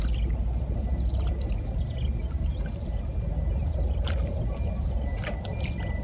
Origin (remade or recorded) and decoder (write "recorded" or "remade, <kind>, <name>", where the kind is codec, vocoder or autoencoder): recorded